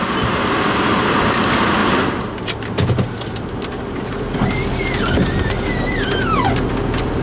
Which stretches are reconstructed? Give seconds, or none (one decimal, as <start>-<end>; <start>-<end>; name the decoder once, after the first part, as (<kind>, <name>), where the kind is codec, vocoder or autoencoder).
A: 1.8-2.3 (vocoder, BigVGAN v2)